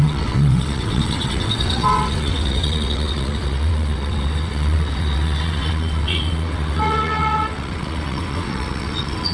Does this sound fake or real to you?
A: fake